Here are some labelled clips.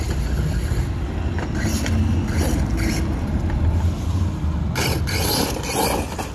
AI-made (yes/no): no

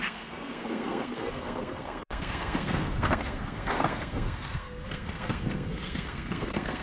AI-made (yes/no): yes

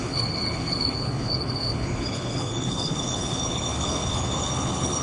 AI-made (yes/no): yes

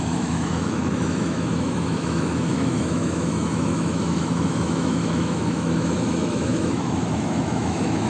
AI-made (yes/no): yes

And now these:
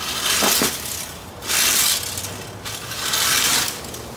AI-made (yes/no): no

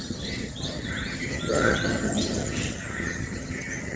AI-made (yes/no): yes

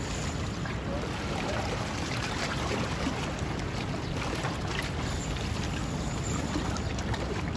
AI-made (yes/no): no